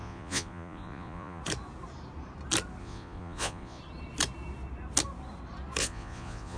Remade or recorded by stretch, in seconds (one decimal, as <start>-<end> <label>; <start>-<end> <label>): 0.0-1.4 remade; 1.4-2.8 recorded; 2.8-3.8 remade; 3.8-5.8 recorded; 5.8-6.6 remade